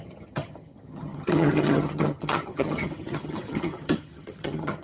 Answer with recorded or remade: remade